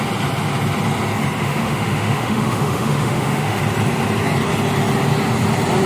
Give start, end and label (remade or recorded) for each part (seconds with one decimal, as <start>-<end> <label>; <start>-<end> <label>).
0.0-1.4 recorded; 1.4-3.6 remade; 3.6-5.9 recorded